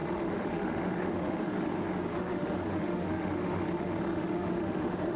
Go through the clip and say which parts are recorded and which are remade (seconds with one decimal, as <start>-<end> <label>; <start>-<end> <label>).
0.0-1.7 remade; 1.7-2.1 recorded; 2.1-5.2 remade